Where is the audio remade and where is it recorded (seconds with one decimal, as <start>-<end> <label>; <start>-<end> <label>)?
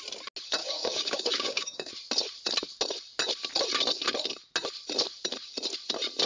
0.0-0.6 recorded; 0.6-1.9 remade; 1.9-6.3 recorded